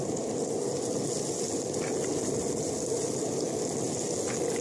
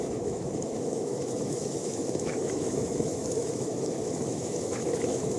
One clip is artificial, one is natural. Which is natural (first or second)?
first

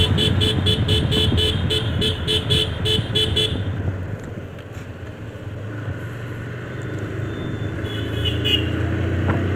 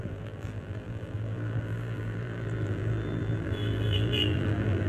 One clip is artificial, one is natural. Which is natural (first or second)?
first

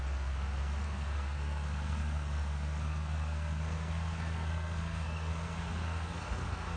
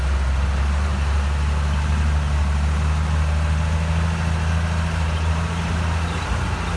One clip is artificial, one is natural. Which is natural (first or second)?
second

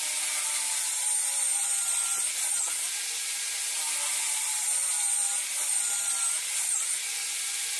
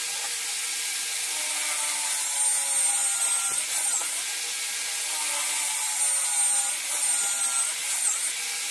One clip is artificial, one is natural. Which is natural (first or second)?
second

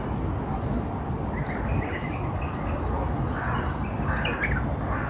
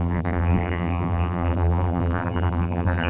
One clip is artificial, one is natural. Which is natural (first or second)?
first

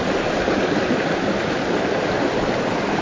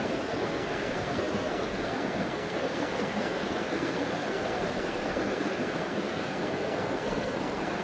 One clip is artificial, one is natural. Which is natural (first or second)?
first